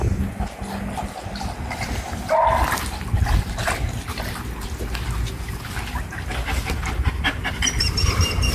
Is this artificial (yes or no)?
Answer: no